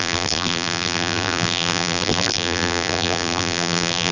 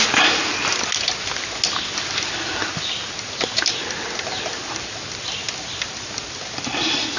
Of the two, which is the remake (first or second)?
first